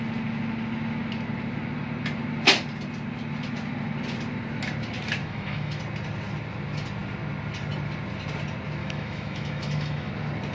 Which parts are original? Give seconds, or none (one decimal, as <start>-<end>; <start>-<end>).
0.0-5.2; 5.8-8.8; 10.1-10.5